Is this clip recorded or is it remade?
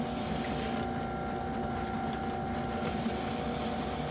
recorded